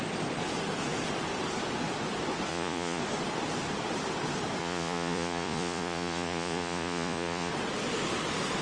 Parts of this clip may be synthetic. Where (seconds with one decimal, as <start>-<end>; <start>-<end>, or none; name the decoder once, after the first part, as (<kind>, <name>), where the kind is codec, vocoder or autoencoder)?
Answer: 2.5-3.0 (vocoder, Vocos); 4.6-7.5